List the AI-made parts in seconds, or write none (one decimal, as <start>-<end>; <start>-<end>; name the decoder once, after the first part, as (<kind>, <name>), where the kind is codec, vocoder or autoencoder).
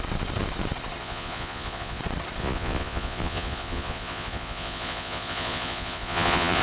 1.0-2.0 (vocoder, Vocos); 2.4-6.6